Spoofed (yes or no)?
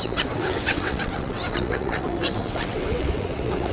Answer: yes